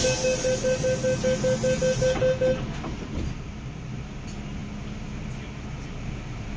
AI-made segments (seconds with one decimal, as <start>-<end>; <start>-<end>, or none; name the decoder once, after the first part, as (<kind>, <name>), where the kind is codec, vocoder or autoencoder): none